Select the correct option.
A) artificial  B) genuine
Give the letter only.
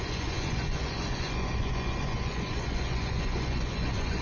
A